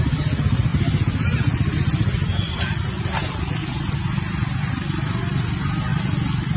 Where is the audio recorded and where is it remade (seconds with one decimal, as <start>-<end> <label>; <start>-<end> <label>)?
0.0-6.6 remade